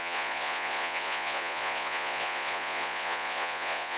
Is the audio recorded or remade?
remade